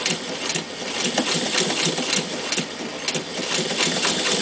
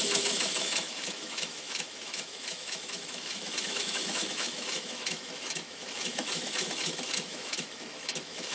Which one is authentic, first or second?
first